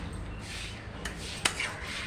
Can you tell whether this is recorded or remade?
recorded